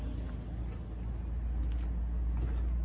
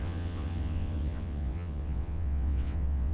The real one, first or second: first